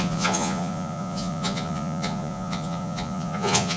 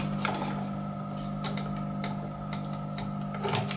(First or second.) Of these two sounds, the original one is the second